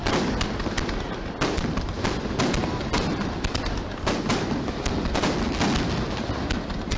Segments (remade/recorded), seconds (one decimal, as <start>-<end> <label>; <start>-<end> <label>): 0.0-0.5 remade; 0.5-2.6 recorded; 2.6-4.8 remade; 4.8-7.0 recorded